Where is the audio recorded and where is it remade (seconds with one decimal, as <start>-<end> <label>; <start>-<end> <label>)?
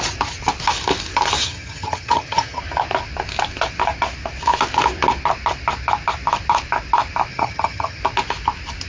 0.0-1.4 recorded; 1.4-2.6 remade; 2.6-7.3 recorded; 7.3-8.0 remade; 8.0-8.9 recorded